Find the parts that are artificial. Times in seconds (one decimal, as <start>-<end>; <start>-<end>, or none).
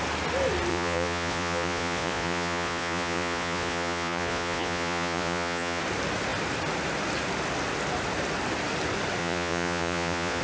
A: 0.7-5.8; 9.2-10.4